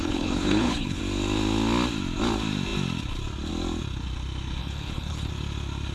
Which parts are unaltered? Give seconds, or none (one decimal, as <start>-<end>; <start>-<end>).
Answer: 1.0-4.6; 5.3-5.9